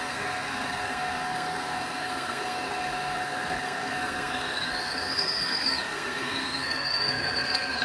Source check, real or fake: fake